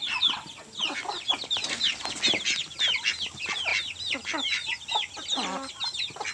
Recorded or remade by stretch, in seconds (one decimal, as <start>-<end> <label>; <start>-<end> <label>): 0.0-6.3 recorded